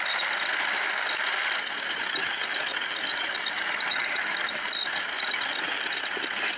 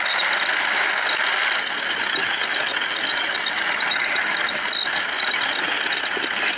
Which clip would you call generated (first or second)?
first